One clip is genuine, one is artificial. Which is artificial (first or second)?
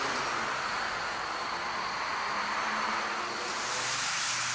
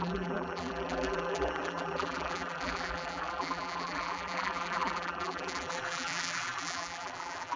second